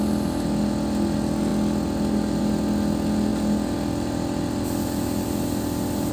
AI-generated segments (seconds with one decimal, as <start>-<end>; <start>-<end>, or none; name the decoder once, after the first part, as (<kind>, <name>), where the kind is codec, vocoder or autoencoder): none